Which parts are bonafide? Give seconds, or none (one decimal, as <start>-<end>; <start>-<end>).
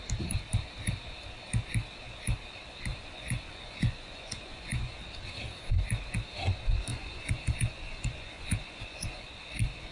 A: 0.0-2.9; 5.0-6.9; 9.2-9.9